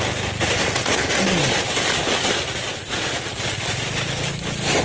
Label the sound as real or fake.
real